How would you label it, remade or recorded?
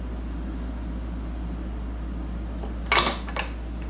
recorded